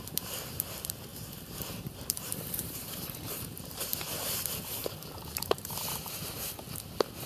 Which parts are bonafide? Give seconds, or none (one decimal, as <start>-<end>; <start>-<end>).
0.0-1.1; 3.7-4.8; 5.7-7.3